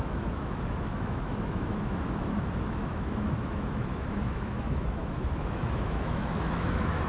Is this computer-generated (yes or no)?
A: yes